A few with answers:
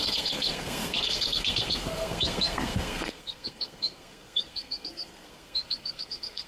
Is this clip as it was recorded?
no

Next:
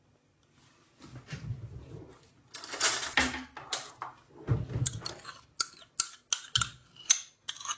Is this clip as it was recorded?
yes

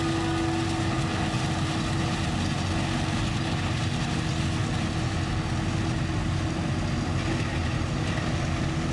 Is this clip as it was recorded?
yes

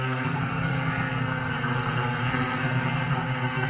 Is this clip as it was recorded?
no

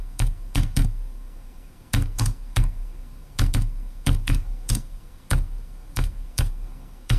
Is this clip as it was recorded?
no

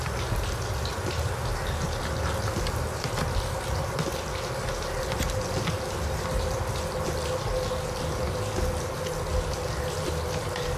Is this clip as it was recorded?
yes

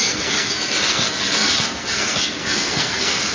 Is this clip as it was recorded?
no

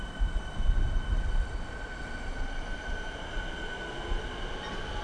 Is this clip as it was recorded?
yes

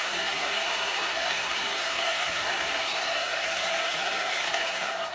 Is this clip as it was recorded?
no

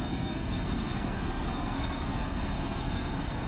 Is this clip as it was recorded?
no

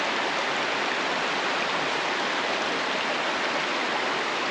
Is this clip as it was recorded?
yes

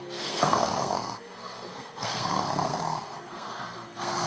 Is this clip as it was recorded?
no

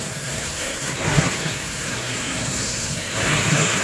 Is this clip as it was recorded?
no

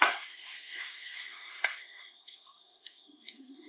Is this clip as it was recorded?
no